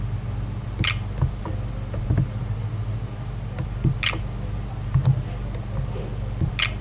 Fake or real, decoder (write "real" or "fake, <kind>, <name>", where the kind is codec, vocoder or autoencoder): real